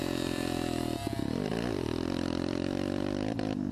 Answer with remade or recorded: remade